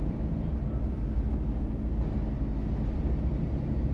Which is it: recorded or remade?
recorded